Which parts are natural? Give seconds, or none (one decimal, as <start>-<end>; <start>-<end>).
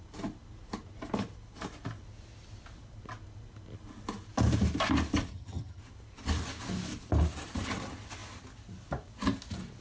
0.0-5.3; 5.8-9.8